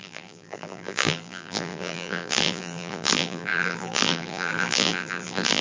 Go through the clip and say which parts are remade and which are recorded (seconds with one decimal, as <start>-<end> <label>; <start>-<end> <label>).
0.0-5.6 remade